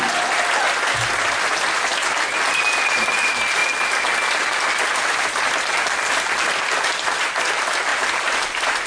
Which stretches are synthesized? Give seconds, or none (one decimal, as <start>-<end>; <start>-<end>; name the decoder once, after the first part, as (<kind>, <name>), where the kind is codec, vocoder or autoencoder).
7.9-8.9 (vocoder, BigVGAN v2)